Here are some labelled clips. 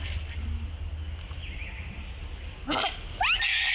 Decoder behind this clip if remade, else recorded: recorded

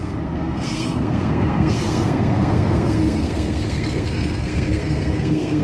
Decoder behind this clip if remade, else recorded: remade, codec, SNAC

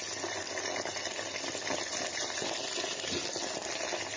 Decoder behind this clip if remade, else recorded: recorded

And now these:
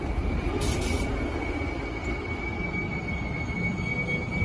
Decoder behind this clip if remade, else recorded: recorded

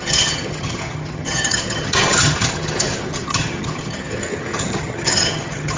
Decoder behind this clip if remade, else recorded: remade, vocoder, HiFi-GAN